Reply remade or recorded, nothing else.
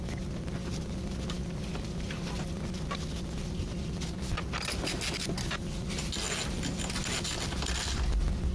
recorded